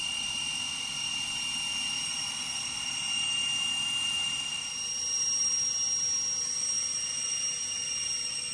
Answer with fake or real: real